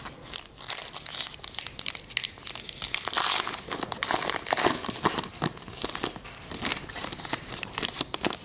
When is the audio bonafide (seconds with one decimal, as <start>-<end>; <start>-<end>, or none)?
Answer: 0.0-6.7; 8.0-8.4